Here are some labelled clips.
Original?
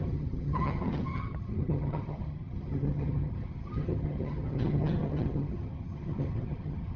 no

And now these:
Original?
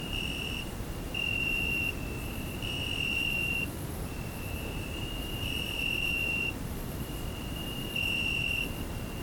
no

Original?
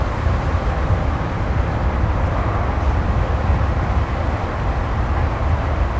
yes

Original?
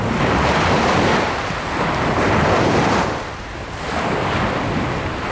yes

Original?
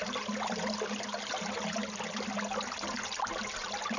yes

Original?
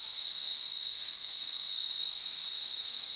no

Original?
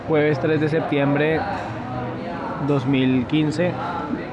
yes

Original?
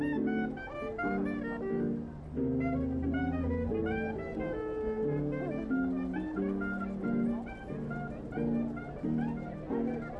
yes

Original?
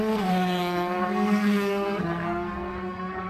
no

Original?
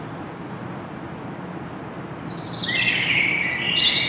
yes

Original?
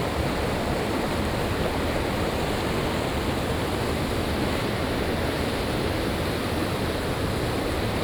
yes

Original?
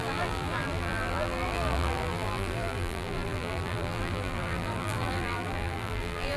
no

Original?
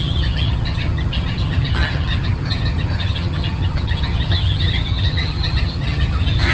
no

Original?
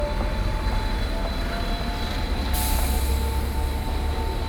yes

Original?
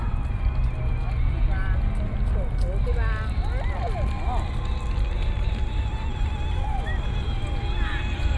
yes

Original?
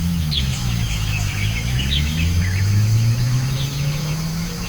no